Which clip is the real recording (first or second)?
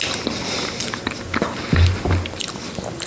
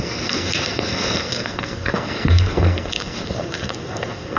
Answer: first